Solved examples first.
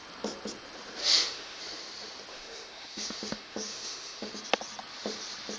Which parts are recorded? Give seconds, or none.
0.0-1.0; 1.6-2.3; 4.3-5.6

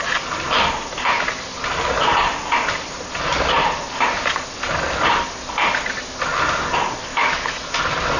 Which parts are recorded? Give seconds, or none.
0.0-7.1; 7.7-8.2

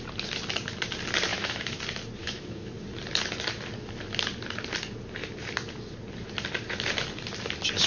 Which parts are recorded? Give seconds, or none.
0.0-1.3; 1.8-2.2; 2.7-7.9

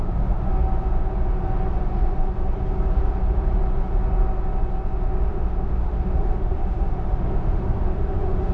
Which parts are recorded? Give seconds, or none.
0.5-1.7; 2.2-5.3

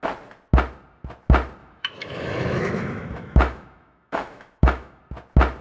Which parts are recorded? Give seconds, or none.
0.0-1.6; 5.0-5.6

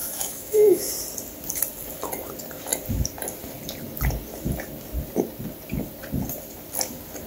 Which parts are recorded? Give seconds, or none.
0.9-7.3

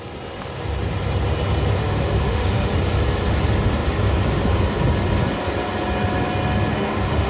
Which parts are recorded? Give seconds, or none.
0.0-1.8; 2.7-6.7